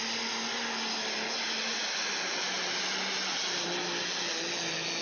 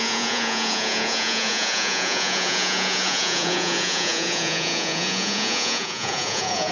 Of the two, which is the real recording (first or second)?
first